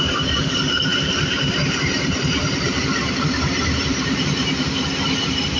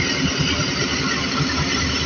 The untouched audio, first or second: second